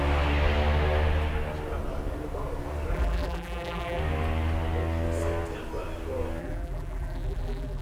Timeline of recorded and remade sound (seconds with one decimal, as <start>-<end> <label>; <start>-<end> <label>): 0.0-2.9 recorded; 2.9-4.0 remade; 4.0-6.4 recorded; 6.4-7.8 remade